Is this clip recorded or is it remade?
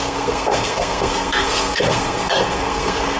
remade